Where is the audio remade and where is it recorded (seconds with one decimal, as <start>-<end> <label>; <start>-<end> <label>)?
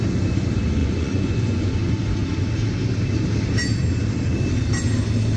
0.0-0.8 recorded; 0.8-1.7 remade; 1.7-5.4 recorded